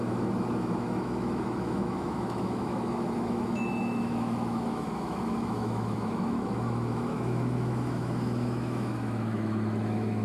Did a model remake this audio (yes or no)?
yes